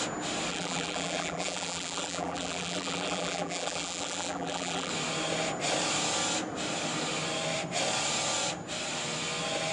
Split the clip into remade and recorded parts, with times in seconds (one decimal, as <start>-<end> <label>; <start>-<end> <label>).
0.0-0.5 recorded; 0.5-4.9 remade; 4.9-9.7 recorded